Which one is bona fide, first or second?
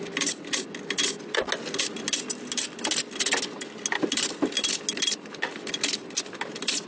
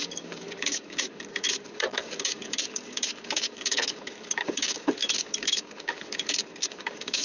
first